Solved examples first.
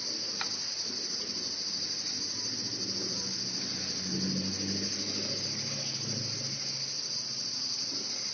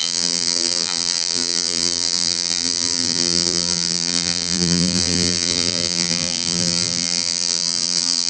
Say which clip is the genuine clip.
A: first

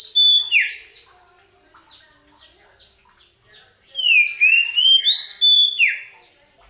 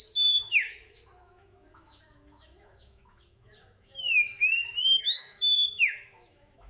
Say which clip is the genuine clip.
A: first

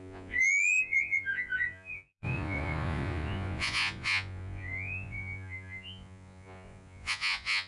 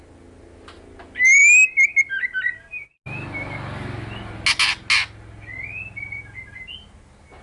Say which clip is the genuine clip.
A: second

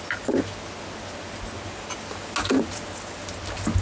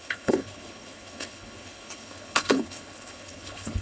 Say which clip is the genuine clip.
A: first